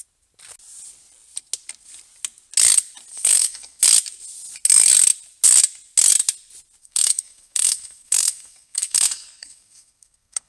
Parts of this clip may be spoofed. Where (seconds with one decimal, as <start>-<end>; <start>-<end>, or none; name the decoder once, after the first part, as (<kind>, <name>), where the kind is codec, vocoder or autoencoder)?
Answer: 3.1-3.8 (codec, SNAC); 6.8-10.5